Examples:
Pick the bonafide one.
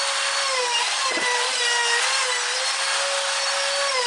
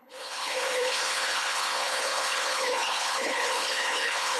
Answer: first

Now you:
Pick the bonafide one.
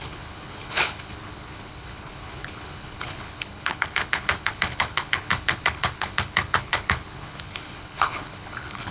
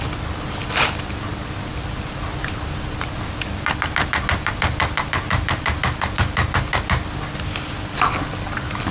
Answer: second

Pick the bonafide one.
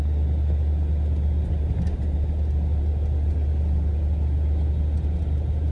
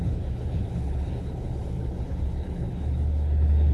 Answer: first